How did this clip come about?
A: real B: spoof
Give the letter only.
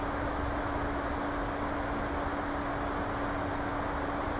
A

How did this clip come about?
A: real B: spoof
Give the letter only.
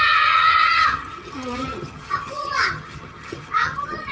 B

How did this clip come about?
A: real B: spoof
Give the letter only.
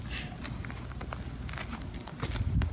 A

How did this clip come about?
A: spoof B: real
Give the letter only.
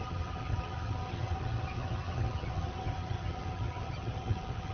A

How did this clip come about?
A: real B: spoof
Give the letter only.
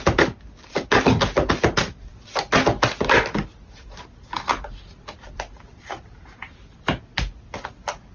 A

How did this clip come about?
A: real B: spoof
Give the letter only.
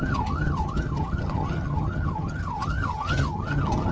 B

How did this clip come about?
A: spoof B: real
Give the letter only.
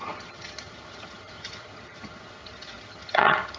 A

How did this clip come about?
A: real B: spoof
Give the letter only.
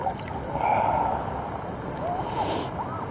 A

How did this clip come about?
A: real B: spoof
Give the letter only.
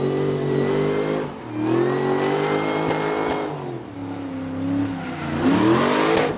A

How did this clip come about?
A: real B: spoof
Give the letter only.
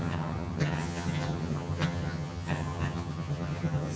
B